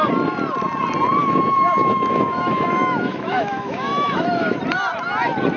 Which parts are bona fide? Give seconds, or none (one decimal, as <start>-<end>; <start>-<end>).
0.0-1.2; 4.6-5.6